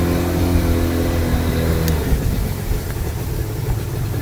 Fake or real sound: real